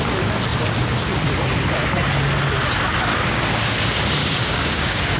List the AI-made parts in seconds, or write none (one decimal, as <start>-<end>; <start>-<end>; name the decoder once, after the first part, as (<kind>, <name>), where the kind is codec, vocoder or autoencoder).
4.2-5.2 (codec, DAC)